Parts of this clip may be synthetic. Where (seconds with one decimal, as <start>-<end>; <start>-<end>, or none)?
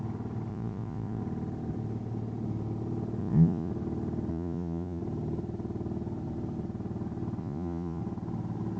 0.5-1.2; 3.2-3.7; 4.3-5.0; 7.4-8.0